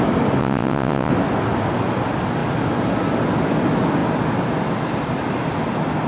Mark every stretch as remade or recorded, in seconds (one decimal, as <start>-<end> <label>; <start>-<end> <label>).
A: 0.0-0.4 recorded; 0.4-1.1 remade; 1.1-6.1 recorded